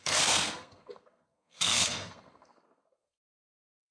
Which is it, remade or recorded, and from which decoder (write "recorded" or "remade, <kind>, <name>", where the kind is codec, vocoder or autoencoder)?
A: remade, codec, SNAC